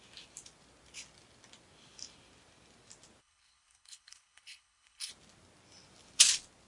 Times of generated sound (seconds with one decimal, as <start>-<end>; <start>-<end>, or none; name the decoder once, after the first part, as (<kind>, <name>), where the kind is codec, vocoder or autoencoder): 3.2-5.1 (codec, HILCodec)